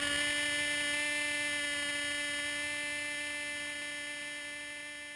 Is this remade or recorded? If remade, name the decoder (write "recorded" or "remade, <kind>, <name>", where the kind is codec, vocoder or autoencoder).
recorded